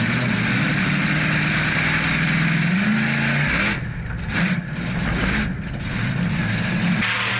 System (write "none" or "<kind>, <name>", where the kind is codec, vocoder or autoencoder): none